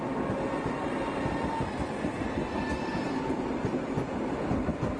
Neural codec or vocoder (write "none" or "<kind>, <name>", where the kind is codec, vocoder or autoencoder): none